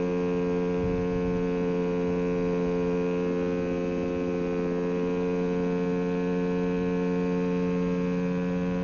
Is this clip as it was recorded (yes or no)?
yes